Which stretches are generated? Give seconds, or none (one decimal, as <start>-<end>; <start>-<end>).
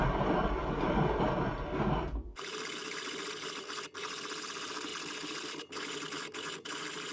none